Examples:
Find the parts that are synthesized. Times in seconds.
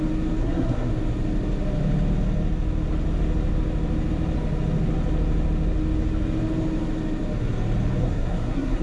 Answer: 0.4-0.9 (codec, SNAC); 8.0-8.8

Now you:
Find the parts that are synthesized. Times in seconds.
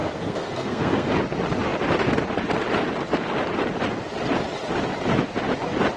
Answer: 0.0-1.1 (codec, SNAC)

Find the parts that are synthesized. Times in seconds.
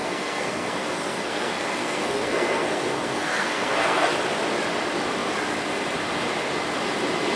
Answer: 0.0-4.1 (codec, SNAC)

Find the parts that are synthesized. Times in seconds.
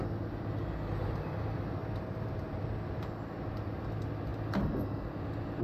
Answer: none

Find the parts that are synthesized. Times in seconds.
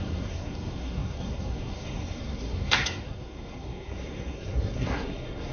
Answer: 0.0-5.5 (codec, SNAC)